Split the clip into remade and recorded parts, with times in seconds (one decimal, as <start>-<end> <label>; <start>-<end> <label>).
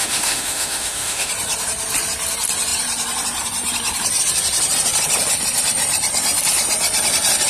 0.0-1.3 remade; 1.3-7.5 recorded